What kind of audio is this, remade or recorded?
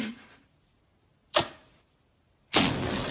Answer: recorded